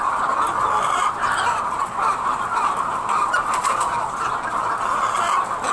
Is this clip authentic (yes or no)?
yes